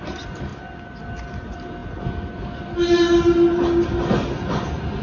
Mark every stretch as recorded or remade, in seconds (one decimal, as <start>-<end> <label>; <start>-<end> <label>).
0.0-5.0 recorded